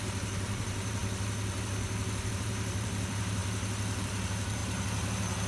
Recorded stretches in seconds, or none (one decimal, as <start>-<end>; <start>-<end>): 1.0-2.3; 3.4-4.0